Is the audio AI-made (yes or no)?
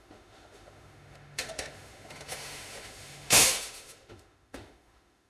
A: yes